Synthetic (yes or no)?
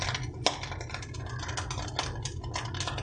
no